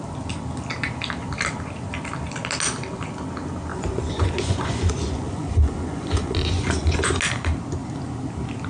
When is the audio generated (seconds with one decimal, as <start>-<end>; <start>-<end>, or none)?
3.7-7.2